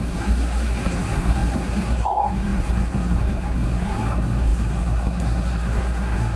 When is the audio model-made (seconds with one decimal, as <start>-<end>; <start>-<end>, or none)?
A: 0.0-6.4